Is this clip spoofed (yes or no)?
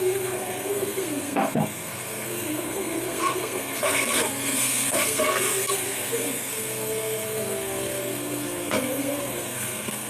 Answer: yes